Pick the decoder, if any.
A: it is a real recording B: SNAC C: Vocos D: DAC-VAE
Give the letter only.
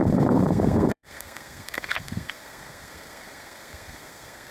B